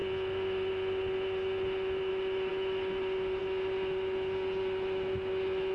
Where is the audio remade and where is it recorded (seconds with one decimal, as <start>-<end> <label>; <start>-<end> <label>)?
0.0-5.7 recorded